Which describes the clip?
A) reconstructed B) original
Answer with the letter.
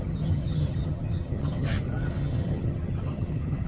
A